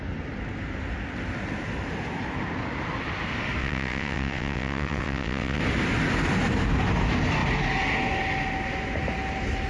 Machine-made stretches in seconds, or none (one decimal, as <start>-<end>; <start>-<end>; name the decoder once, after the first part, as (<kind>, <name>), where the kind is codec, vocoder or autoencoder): 3.6-5.6 (vocoder, WaveNeXt)